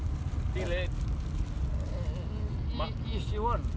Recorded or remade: recorded